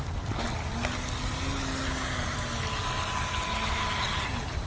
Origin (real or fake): real